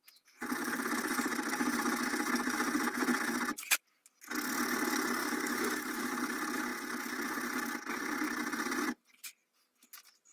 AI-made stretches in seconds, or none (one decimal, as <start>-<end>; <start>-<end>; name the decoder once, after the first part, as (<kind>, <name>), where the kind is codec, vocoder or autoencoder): 5.2-6.1 (autoencoder, DAC-VAE)